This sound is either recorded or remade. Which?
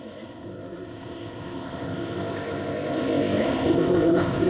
remade